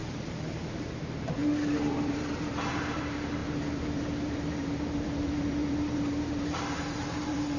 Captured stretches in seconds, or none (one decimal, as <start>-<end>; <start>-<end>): none